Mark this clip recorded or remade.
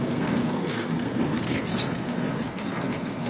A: remade